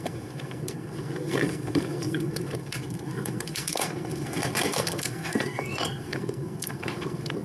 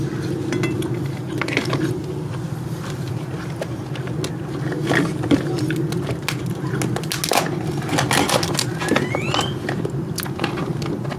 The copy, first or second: first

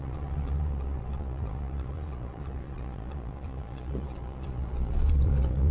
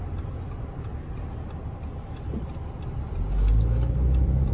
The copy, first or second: first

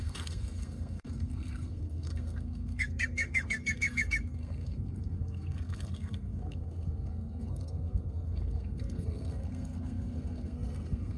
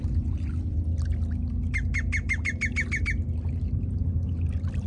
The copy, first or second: first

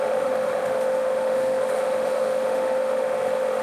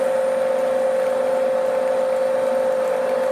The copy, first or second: first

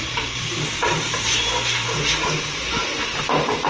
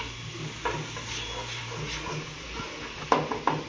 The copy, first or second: first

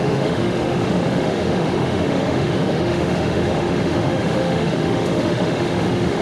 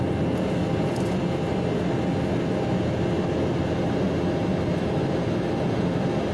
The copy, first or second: first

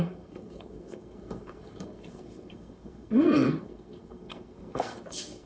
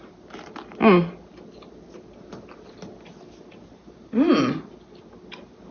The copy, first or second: first